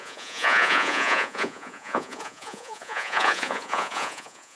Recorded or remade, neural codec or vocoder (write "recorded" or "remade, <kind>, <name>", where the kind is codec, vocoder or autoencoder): remade, vocoder, Vocos